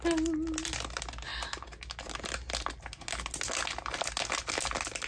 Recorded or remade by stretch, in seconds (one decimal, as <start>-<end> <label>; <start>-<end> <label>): 0.0-5.1 recorded